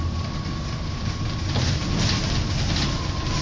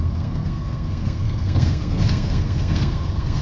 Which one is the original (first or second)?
first